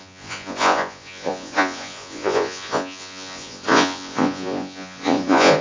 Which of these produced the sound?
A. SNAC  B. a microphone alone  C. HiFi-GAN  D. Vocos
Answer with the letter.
D